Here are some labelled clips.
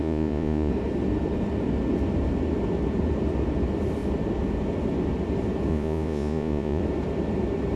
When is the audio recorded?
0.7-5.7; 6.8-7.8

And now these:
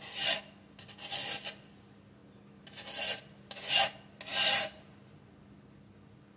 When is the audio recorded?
0.0-6.4

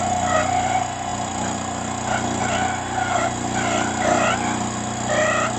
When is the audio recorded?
0.0-5.6

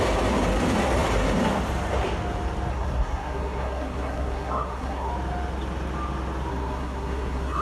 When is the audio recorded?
0.0-2.7; 5.1-6.5

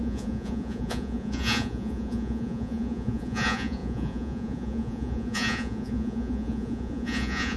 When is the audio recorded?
none